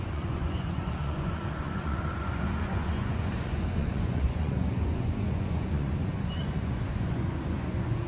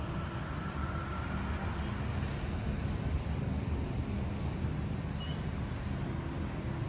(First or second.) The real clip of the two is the second